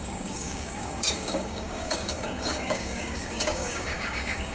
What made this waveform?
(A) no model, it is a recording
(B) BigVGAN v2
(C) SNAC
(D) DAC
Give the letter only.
D